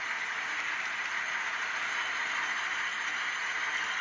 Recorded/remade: recorded